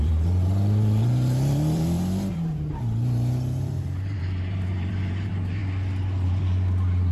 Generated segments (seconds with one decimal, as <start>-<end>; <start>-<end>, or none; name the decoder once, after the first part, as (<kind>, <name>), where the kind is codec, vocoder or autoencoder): 0.0-5.6 (vocoder, BigVGAN v2)